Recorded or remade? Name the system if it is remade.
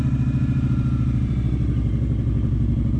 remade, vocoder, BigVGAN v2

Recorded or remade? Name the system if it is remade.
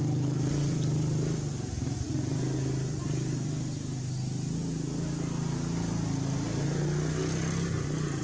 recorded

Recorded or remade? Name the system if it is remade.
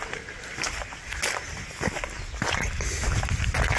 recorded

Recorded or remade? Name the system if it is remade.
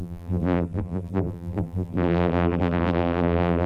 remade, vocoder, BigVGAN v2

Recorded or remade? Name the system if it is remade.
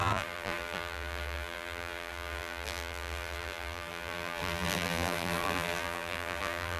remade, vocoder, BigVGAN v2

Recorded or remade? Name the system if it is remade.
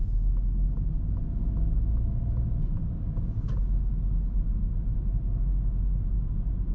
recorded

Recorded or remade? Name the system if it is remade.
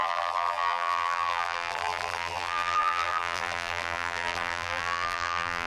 remade, vocoder, BigVGAN v2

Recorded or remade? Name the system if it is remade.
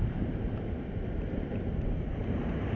remade, vocoder, BigVGAN v2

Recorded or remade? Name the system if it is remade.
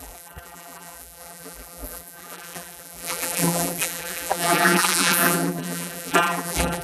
remade, vocoder, BigVGAN v2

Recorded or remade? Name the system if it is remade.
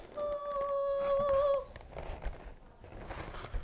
recorded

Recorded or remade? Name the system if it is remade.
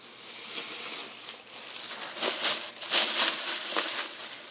recorded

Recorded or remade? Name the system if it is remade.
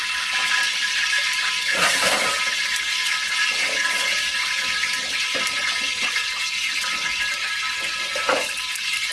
remade, vocoder, BigVGAN v2